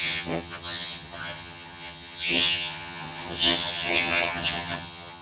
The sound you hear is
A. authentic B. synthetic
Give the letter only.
B